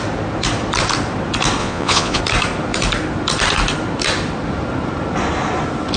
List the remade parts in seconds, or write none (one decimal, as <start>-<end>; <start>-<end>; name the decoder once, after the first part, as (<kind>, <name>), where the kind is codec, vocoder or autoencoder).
1.6-2.2 (vocoder, Vocos)